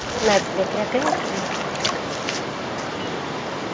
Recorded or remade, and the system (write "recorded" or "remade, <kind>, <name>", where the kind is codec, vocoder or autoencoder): recorded